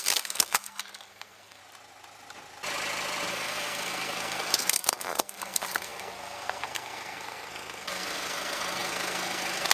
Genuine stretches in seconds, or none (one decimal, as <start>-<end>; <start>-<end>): 1.6-3.3